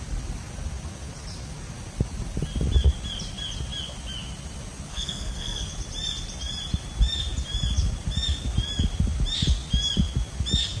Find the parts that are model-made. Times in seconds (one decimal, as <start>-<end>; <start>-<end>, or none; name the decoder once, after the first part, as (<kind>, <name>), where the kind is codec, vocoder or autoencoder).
4.9-5.7 (codec, SNAC)